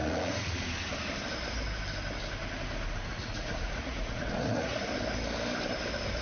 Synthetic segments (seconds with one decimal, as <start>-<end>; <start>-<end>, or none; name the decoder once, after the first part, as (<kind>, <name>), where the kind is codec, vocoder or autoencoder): 0.0-0.6 (vocoder, Vocos); 3.1-4.8